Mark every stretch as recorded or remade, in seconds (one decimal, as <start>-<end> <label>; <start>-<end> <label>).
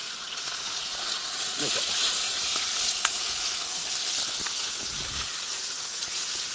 0.0-3.8 remade; 3.8-4.4 recorded; 4.4-6.5 remade